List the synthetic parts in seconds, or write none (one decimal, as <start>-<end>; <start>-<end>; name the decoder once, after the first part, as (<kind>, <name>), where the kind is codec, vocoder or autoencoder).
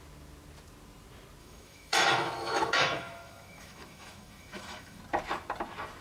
1.4-5.0 (autoencoder, DAC-VAE)